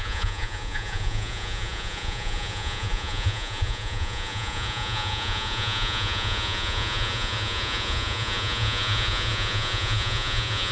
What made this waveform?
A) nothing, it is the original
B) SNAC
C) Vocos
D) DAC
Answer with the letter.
C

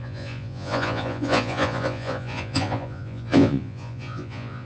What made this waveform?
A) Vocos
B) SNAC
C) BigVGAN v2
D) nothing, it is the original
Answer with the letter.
A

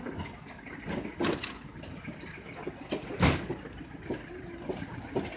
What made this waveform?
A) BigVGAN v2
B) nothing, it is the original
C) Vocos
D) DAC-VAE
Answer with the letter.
B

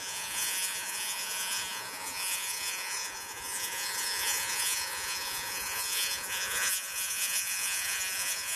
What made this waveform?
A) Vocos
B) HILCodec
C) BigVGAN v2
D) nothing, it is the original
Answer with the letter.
A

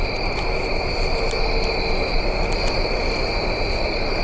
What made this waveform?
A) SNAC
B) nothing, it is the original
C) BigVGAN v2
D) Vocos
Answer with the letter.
B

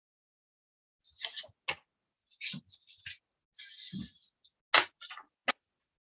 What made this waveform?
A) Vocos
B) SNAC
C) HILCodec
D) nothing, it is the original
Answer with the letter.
D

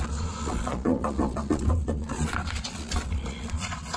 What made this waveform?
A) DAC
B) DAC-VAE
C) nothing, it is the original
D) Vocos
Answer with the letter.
D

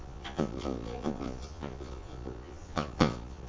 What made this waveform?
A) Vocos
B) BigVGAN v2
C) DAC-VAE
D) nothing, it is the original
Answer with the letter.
A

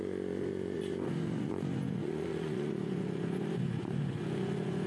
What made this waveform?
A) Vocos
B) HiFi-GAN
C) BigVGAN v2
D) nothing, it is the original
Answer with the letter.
A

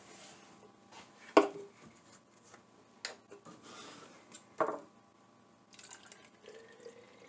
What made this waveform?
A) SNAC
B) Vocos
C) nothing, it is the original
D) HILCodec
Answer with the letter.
C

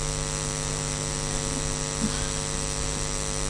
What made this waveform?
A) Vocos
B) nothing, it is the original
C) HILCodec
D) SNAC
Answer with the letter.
B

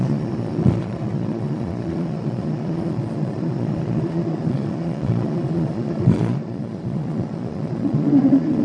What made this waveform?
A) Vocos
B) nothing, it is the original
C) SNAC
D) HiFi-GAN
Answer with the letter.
A